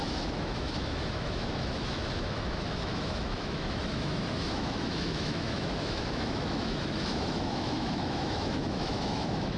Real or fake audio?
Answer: fake